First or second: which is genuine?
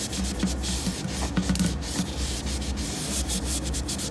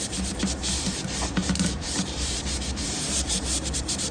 first